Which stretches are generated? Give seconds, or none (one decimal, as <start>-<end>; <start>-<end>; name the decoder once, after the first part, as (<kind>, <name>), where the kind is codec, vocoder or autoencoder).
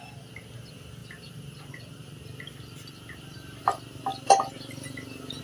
1.0-1.7 (vocoder, BigVGAN v2); 4.1-5.4